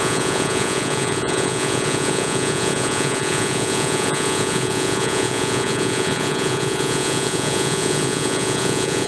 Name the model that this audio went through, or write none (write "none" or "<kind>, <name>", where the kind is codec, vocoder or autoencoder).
vocoder, Vocos